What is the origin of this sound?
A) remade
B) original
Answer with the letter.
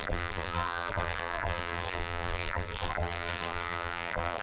A